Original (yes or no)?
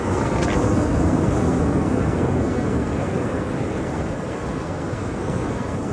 no